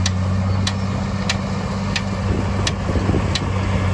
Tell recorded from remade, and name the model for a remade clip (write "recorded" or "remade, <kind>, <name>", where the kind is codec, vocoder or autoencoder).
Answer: recorded